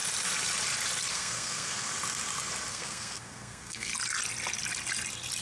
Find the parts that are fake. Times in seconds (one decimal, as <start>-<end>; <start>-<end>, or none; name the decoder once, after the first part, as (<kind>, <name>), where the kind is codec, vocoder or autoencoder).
1.1-1.9 (codec, SNAC); 2.7-3.9